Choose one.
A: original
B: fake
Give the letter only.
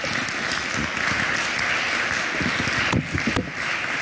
A